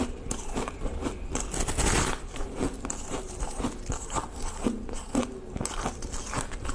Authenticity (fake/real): real